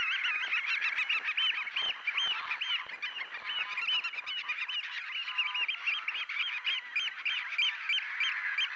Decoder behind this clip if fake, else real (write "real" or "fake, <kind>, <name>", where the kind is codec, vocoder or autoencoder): real